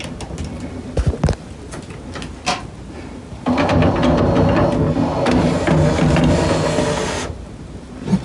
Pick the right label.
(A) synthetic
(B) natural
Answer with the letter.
B